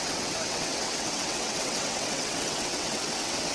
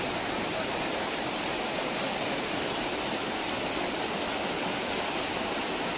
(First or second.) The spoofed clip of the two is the first